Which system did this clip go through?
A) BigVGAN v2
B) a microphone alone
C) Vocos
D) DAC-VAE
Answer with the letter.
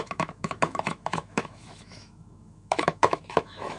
D